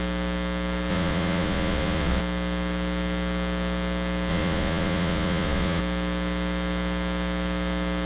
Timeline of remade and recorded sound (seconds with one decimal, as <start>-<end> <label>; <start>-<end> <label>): 0.0-0.9 recorded; 0.9-2.2 remade; 2.2-4.3 recorded; 4.3-5.8 remade; 5.8-8.1 recorded